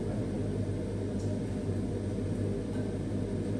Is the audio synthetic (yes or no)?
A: no